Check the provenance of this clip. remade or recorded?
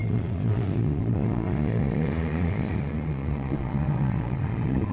remade